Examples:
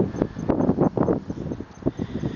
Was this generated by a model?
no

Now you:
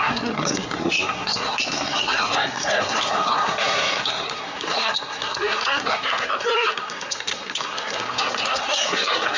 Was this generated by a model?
yes